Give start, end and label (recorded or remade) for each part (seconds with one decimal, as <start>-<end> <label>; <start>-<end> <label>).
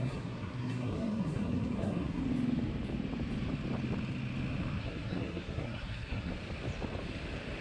0.0-2.2 remade; 2.2-4.8 recorded; 4.8-6.3 remade; 6.3-7.6 recorded